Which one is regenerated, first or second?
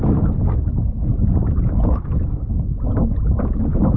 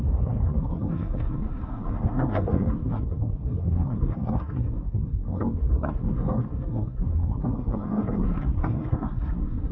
second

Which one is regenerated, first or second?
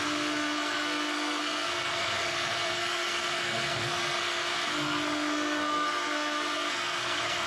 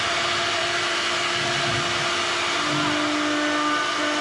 first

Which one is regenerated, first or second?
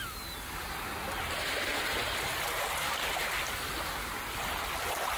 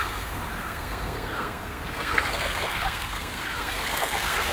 second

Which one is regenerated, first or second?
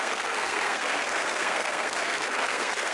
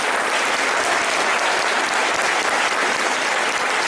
first